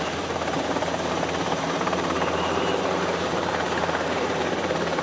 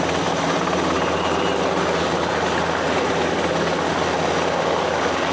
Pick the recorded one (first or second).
second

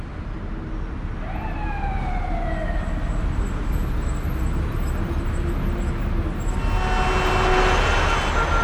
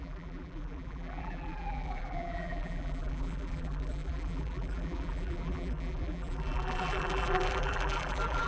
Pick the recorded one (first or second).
first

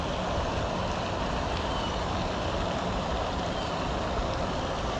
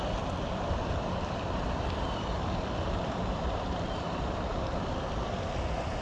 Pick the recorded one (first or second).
first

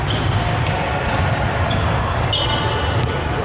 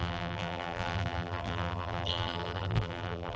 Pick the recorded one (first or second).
first